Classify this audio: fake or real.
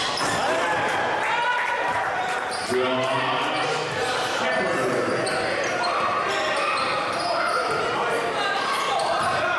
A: real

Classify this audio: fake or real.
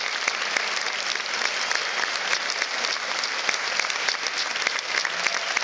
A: real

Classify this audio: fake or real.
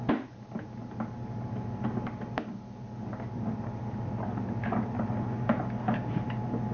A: real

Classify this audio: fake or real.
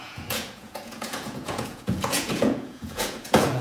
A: fake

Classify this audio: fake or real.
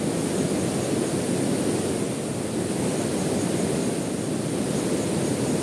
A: real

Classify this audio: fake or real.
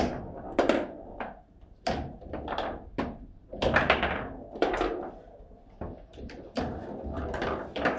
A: real